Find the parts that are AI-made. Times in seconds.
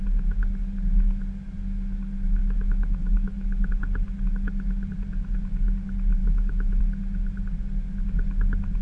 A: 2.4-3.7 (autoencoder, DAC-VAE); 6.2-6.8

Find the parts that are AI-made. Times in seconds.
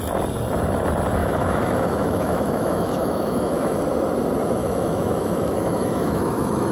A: 1.2-3.8 (autoencoder, DAC-VAE); 4.6-6.7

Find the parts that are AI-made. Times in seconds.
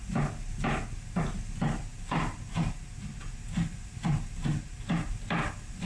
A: none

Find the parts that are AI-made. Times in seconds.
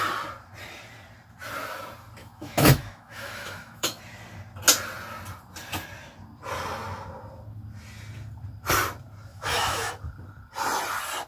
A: 2.2-4.0 (autoencoder, DAC-VAE); 9.3-9.9